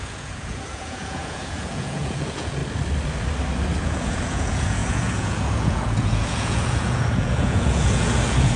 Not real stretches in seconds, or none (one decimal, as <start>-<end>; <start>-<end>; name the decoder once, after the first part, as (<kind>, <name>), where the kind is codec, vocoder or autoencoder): 0.0-2.6 (vocoder, Vocos); 3.8-8.6